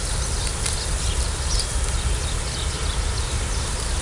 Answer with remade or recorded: recorded